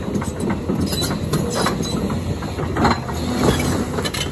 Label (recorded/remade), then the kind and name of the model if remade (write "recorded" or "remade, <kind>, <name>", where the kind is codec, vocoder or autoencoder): recorded